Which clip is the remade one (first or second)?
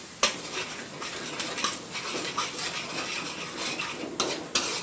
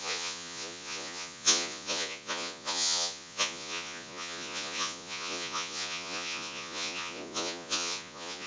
second